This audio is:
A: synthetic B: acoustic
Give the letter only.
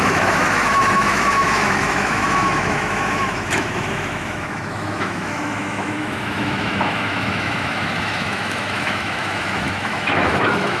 A